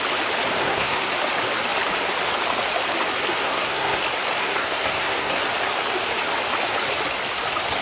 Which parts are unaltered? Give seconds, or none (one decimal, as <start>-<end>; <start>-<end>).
0.0-0.6; 1.1-3.4; 4.0-4.4; 5.4-7.8